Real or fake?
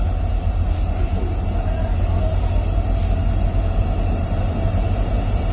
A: real